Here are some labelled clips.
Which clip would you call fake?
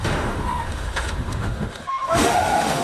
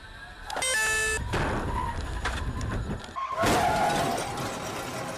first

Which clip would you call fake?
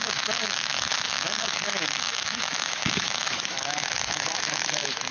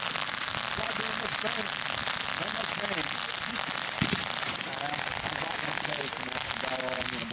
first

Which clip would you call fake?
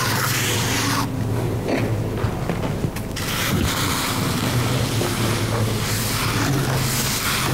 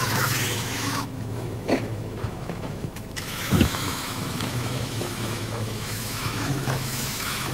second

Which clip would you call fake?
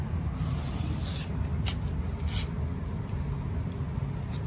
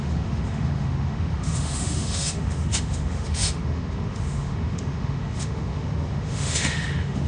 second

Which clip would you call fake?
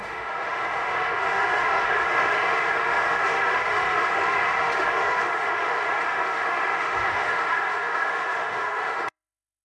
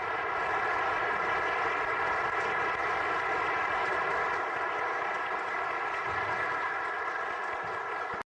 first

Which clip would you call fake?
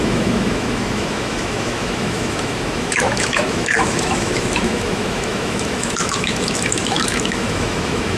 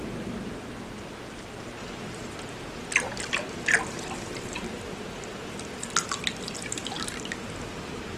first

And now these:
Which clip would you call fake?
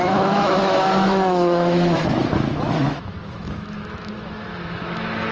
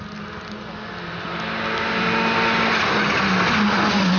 first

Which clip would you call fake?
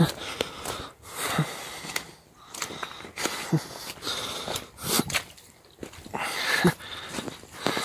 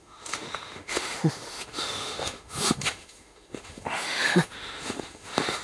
second